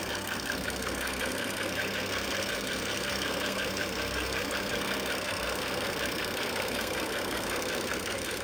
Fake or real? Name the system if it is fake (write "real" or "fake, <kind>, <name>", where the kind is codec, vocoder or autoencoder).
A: fake, codec, SNAC